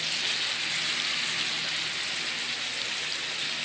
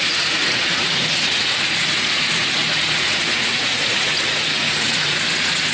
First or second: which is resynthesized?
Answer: second